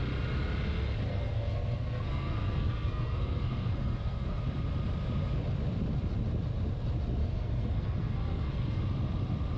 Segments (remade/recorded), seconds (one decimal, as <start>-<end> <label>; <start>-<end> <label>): 0.0-1.1 recorded; 1.1-4.4 remade; 4.4-7.2 recorded; 7.2-8.8 remade; 8.8-9.6 recorded